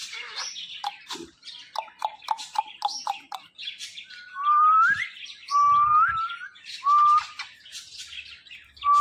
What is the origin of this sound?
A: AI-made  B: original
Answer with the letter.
B